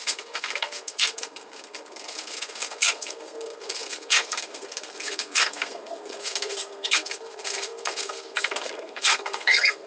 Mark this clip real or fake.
fake